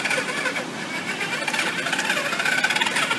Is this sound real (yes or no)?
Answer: yes